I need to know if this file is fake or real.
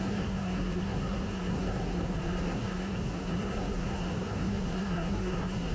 fake